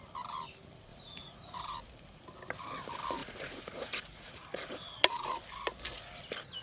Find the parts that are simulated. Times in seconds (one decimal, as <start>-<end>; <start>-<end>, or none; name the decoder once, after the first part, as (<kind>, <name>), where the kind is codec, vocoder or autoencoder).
0.9-1.7 (vocoder, Vocos); 3.2-5.3